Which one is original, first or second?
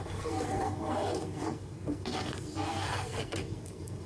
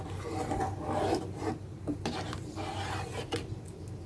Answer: second